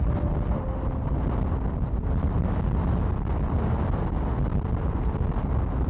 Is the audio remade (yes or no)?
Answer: no